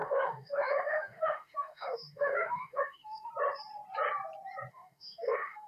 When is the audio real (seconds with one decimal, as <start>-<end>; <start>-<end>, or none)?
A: 3.3-4.7